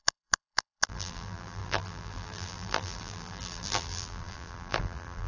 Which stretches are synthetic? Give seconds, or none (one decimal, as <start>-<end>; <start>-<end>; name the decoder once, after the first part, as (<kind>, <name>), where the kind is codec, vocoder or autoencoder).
0.0-5.3 (vocoder, BigVGAN v2)